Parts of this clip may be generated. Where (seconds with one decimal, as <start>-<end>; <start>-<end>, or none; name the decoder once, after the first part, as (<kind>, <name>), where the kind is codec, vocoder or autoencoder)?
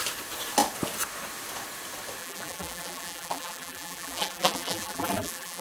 2.2-5.6 (vocoder, BigVGAN v2)